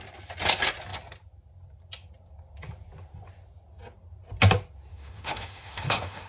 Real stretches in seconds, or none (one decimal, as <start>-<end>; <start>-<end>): 0.0-4.9